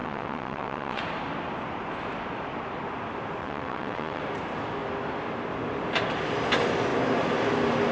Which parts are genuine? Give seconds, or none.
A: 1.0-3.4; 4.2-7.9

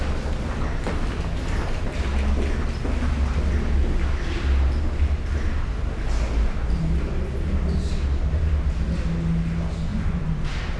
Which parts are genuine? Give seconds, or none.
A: 0.0-9.9; 10.4-10.8

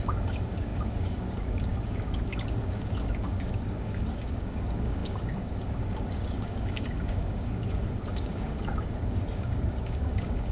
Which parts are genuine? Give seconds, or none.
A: none